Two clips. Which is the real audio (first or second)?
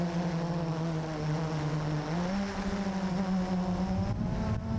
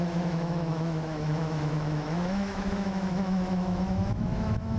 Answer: first